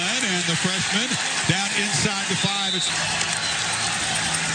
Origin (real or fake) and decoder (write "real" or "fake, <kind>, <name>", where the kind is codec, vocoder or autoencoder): real